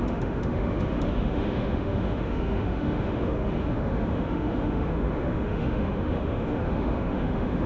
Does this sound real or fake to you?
fake